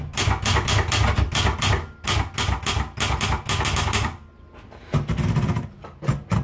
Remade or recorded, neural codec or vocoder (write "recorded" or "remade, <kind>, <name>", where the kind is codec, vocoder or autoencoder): recorded